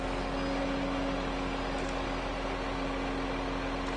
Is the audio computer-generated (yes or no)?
no